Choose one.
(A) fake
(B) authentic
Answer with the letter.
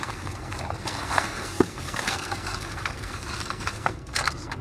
A